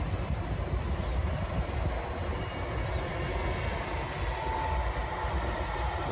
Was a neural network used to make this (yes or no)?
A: no